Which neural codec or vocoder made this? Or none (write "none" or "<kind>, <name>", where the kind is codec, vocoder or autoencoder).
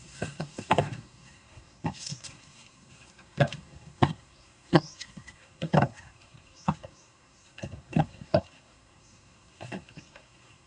codec, SNAC